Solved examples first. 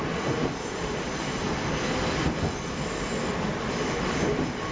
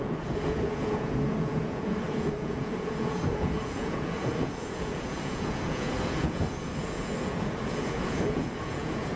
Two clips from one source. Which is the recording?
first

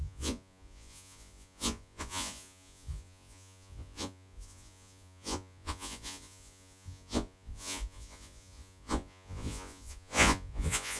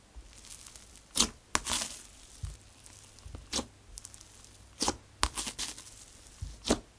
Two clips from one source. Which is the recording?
second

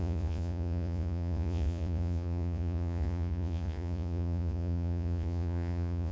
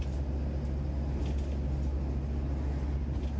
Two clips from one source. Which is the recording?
second